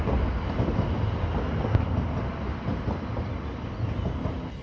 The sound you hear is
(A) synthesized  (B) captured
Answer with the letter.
B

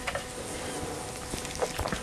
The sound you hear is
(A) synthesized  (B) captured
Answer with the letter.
B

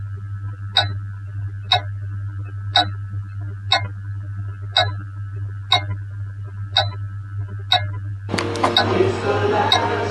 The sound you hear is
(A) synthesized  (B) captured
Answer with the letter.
B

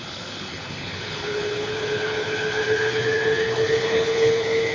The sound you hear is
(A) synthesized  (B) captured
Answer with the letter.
A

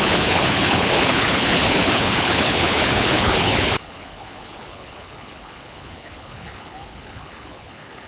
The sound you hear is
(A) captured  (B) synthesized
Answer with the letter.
B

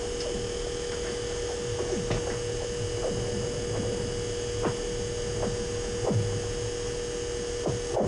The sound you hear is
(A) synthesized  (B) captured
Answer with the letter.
B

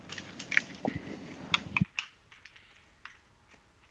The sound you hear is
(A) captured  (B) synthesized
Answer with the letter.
A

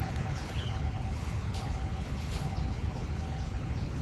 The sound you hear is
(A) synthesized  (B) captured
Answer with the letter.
A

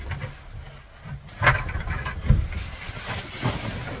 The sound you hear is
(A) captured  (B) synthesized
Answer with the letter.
A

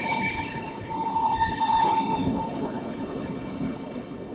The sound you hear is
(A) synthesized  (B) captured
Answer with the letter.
A